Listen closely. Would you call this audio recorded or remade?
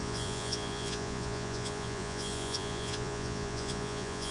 remade